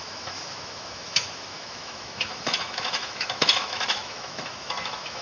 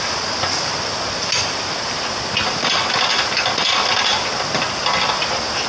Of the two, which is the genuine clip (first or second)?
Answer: second